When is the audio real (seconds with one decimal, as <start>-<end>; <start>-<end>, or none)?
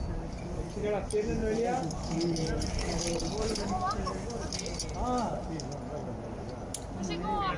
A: 0.0-7.6